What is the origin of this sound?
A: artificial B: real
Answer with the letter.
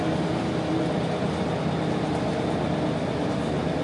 B